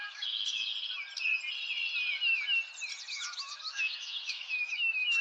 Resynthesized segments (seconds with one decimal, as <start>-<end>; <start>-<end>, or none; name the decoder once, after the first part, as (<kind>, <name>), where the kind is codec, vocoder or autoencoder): 0.0-0.7 (autoencoder, DAC-VAE); 3.1-5.2